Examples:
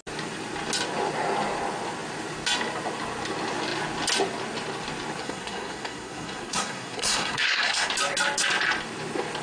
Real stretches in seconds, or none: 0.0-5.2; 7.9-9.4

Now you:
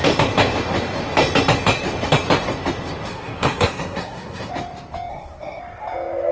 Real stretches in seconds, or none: 0.0-3.1; 4.5-5.1; 5.6-6.3

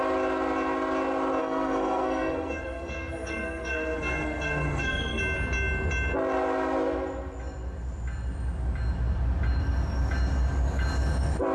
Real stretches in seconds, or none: 0.0-1.4; 5.2-11.5

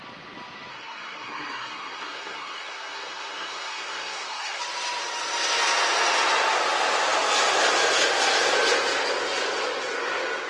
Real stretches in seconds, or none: 0.0-0.7; 4.6-10.5

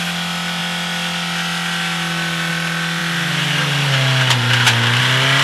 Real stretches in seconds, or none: 0.0-5.4

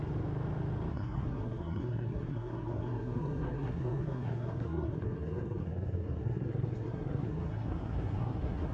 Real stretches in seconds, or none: 0.0-0.9